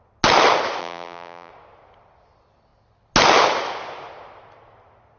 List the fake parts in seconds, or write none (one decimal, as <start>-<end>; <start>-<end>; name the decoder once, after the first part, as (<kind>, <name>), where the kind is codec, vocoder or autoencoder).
0.8-1.5 (vocoder, BigVGAN v2)